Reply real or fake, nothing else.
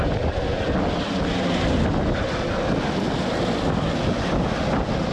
real